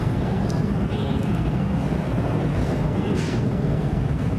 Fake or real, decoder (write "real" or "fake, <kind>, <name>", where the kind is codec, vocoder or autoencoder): fake, codec, SNAC